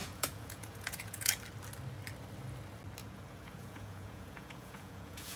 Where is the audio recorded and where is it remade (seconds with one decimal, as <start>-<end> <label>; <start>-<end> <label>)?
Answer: 0.0-1.4 remade; 1.4-3.0 recorded; 3.0-5.4 remade